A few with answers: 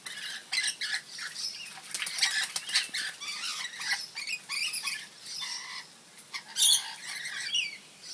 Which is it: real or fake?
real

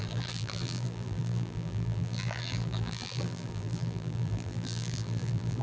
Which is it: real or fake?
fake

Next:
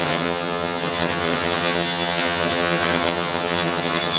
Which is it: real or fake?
fake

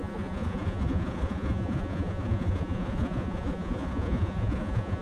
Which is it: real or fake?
fake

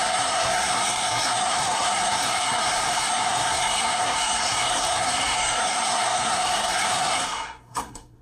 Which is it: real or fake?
fake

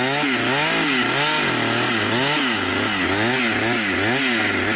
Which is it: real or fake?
real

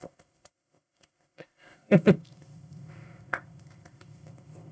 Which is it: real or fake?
fake